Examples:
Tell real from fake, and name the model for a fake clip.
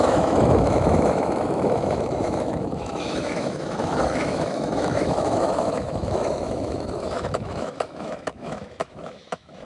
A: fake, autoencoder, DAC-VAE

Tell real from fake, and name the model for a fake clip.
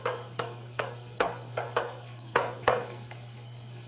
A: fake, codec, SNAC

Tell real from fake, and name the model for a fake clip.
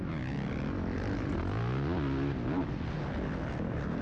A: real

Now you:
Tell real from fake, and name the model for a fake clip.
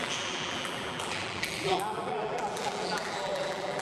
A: fake, vocoder, BigVGAN v2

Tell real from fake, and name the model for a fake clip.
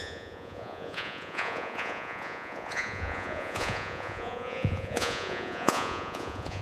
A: fake, vocoder, Vocos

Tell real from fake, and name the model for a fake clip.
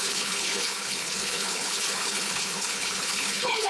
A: fake, codec, HILCodec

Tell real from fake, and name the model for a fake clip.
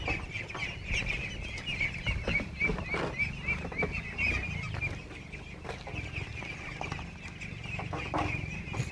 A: real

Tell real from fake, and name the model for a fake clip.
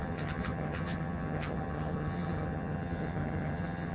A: fake, vocoder, HiFi-GAN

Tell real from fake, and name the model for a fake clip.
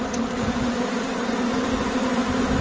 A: real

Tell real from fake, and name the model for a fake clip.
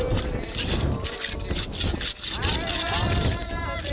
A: real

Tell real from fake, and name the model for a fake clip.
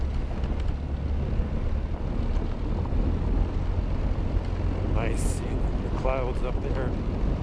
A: real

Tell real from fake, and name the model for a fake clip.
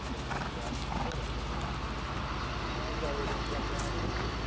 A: real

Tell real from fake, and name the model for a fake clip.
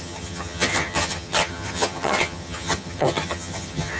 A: fake, vocoder, HiFi-GAN